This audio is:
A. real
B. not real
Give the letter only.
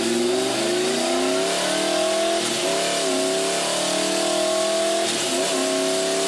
A